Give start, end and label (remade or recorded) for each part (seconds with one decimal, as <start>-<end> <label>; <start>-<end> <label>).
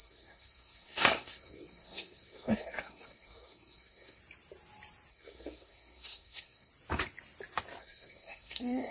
0.0-4.2 remade; 4.2-5.1 recorded; 5.1-6.7 remade; 6.7-7.8 recorded; 7.8-8.9 remade